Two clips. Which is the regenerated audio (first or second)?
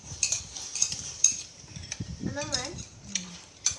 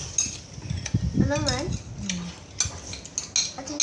first